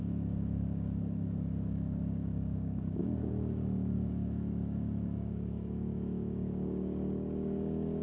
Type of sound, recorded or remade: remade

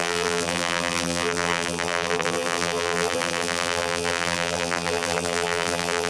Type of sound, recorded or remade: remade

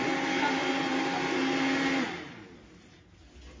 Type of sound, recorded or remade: recorded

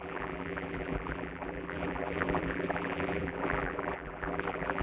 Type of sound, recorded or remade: remade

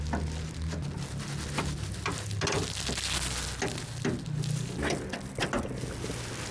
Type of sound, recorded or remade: recorded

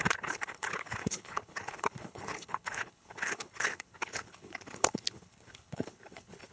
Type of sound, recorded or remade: remade